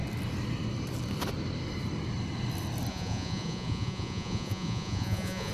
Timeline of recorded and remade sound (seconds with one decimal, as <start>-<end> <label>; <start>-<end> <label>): 0.0-2.9 recorded; 2.9-5.5 remade